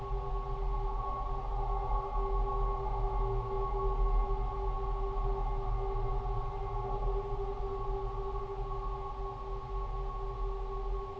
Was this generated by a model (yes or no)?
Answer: no